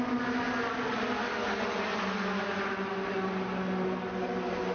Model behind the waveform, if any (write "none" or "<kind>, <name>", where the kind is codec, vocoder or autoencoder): none